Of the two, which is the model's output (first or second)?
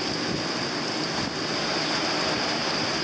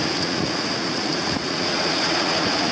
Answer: second